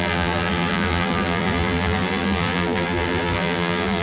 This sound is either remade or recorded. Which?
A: remade